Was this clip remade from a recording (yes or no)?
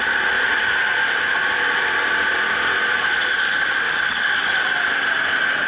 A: no